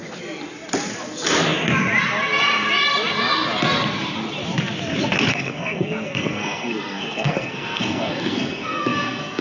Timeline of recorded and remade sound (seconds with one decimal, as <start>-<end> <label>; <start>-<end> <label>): 0.0-5.3 recorded; 5.3-9.4 remade